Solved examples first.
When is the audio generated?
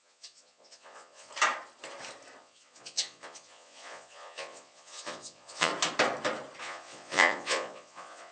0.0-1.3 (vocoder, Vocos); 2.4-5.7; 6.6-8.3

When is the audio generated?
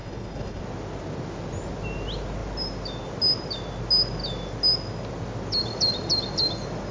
0.0-0.6 (codec, HILCodec)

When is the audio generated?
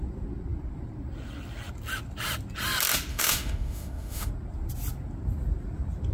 3.1-4.3 (autoencoder, DAC-VAE)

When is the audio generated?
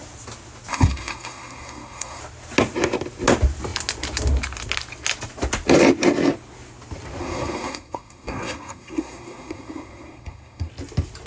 0.7-2.2 (codec, SNAC); 7.2-10.7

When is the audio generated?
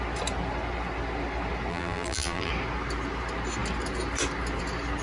1.7-2.5 (vocoder, BigVGAN v2)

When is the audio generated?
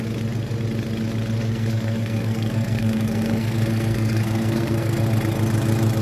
1.4-5.0 (codec, SNAC)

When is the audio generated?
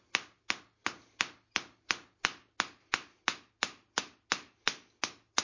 none